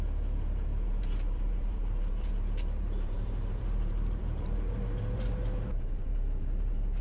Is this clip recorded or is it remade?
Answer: remade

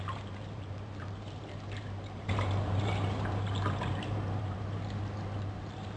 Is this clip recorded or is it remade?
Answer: remade